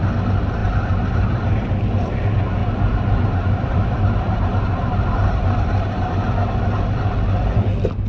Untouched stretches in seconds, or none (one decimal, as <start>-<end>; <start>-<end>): 0.0-0.6; 1.7-2.6; 6.3-8.1